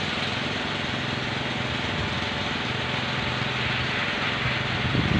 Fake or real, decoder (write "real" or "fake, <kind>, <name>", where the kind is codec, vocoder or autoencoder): real